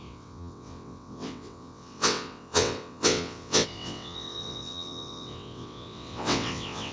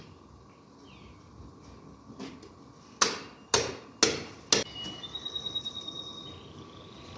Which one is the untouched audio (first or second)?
second